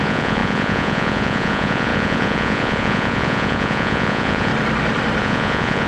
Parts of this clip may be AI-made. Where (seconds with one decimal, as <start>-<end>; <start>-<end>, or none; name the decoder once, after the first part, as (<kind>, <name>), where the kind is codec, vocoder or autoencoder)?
0.0-4.5 (vocoder, Vocos); 5.2-5.9